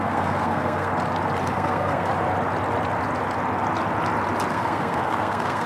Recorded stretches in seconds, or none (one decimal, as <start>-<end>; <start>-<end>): 0.9-1.4; 2.1-4.5